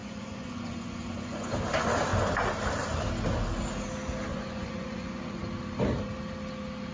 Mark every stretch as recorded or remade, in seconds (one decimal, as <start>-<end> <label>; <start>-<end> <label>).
0.0-1.5 remade; 1.5-4.3 recorded; 4.3-5.4 remade; 5.4-6.9 recorded